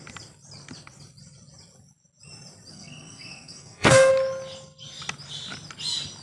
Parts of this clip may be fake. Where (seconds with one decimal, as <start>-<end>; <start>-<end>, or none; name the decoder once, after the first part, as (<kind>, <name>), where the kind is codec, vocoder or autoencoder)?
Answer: 2.7-4.1 (codec, SNAC)